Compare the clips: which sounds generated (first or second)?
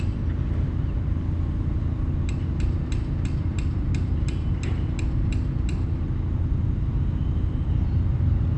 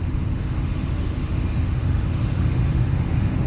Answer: second